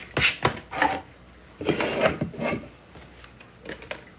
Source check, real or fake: real